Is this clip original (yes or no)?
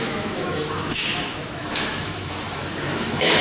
no